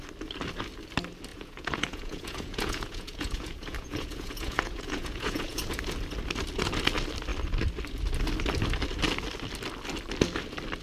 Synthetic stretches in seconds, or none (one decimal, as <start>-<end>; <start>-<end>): 1.3-5.8

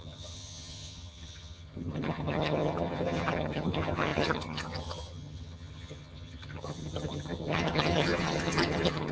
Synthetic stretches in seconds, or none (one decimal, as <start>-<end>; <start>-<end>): 0.0-9.1

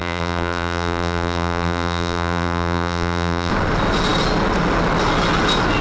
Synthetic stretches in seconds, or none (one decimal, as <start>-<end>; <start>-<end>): 0.0-3.5

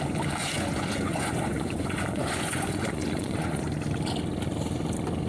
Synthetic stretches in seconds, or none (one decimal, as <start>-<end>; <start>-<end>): 0.4-3.6